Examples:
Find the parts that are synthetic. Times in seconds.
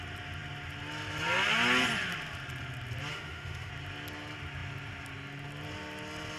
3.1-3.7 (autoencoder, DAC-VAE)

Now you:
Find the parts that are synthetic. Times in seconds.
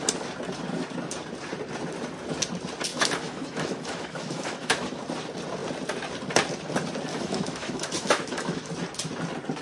2.9-5.0 (autoencoder, DAC-VAE); 7.1-8.7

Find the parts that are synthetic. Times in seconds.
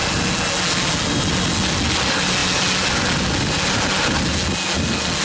none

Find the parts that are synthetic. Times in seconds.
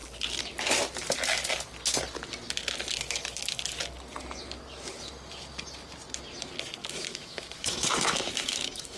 6.8-9.0 (autoencoder, DAC-VAE)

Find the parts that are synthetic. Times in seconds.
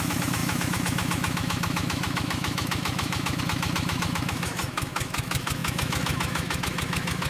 0.0-7.3 (autoencoder, DAC-VAE)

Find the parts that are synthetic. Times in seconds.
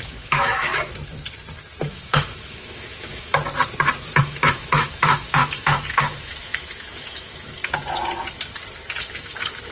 0.0-0.7 (autoencoder, DAC-VAE); 1.8-3.4; 4.2-7.6; 9.0-9.7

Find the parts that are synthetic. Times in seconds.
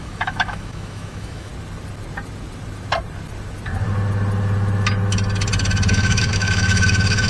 0.0-1.5 (autoencoder, DAC-VAE); 5.9-7.3